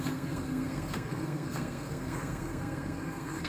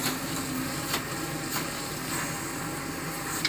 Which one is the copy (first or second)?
first